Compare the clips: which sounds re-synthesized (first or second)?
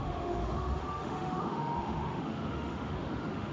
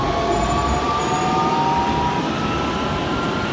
first